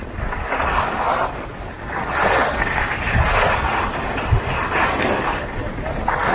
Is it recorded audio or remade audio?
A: recorded